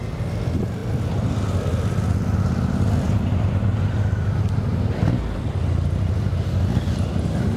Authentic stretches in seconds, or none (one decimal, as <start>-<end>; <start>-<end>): 0.0-7.6